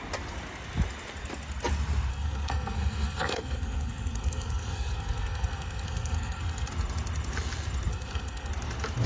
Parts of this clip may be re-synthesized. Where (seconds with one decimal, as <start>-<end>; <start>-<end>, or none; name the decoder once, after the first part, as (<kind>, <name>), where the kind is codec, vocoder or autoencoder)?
2.1-6.7 (codec, SNAC); 7.9-8.5